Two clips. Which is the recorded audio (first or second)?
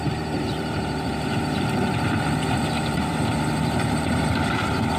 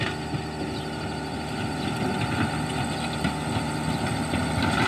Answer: second